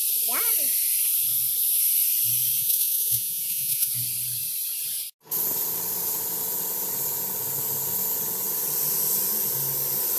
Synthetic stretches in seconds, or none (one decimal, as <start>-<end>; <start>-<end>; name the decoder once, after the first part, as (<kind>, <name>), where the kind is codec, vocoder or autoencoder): 2.6-3.9 (vocoder, Vocos)